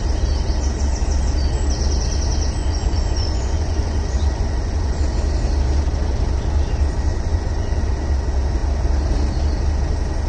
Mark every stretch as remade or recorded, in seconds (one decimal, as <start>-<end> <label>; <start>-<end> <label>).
0.0-2.6 recorded; 2.6-5.0 remade; 5.0-7.1 recorded; 7.1-7.9 remade; 7.9-10.3 recorded